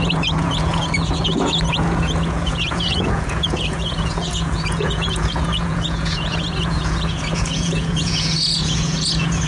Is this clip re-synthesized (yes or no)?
yes